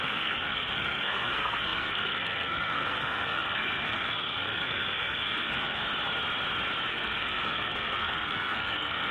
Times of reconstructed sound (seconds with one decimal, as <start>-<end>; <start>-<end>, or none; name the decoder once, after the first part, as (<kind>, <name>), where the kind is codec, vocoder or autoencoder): 0.0-5.8 (codec, SNAC); 6.9-9.1

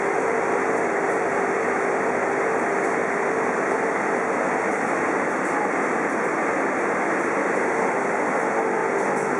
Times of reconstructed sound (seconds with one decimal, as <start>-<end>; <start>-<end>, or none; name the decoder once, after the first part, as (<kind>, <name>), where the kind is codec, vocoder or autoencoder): none